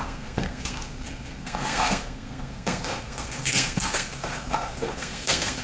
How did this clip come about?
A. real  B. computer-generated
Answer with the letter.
B